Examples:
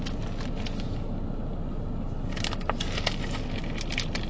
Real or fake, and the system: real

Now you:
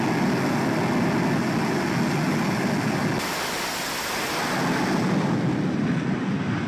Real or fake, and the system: real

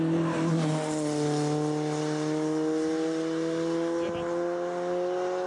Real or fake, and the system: real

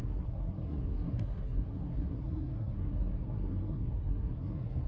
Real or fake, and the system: fake, codec, SNAC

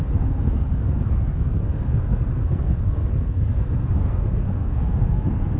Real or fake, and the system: fake, codec, SNAC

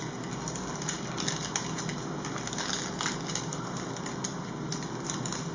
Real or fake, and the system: real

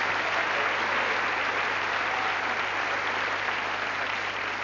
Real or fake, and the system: real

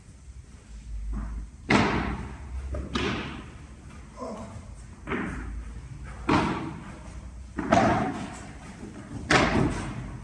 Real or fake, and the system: real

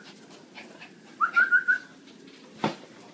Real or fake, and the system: real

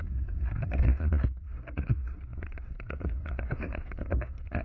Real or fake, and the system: fake, codec, SNAC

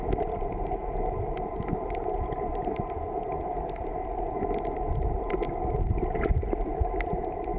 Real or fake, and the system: real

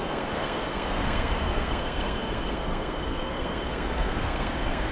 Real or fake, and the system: fake, codec, SNAC